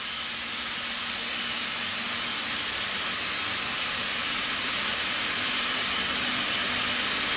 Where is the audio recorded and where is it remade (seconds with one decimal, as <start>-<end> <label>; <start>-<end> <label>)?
0.0-4.9 recorded; 4.9-6.3 remade; 6.3-7.4 recorded